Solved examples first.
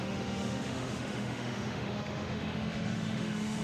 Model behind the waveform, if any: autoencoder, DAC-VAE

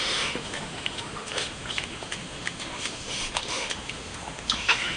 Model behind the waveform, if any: autoencoder, DAC-VAE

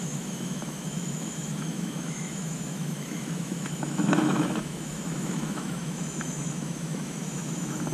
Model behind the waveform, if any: autoencoder, DAC-VAE